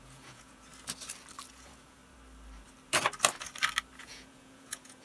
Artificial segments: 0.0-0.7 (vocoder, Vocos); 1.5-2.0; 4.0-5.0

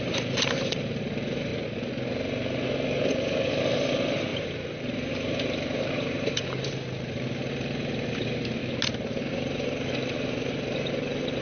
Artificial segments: 0.0-1.5 (vocoder, BigVGAN v2); 3.1-8.6; 9.3-11.4

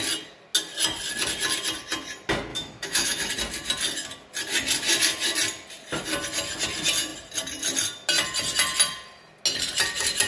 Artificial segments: 2.5-3.3 (autoencoder, DAC-VAE)